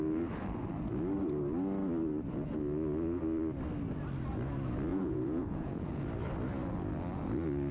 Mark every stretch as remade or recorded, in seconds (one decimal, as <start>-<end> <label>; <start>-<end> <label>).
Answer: 0.0-4.9 recorded; 4.9-6.0 remade; 6.0-7.7 recorded